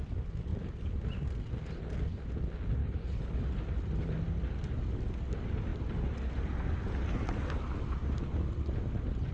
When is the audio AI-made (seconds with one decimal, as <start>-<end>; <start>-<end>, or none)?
2.8-3.4